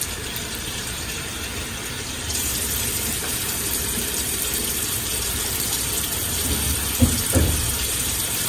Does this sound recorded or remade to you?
remade